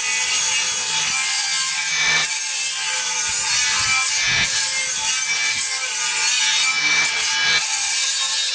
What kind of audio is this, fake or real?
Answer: real